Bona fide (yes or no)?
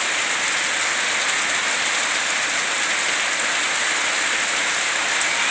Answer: yes